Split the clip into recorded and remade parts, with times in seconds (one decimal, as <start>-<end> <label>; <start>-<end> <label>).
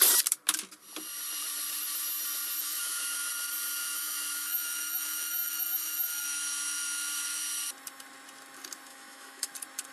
0.0-2.6 recorded; 2.6-3.3 remade; 3.3-3.8 recorded; 3.8-7.4 remade; 7.4-8.9 recorded; 8.9-9.5 remade; 9.5-9.9 recorded